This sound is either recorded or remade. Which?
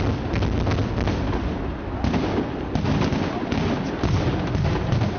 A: recorded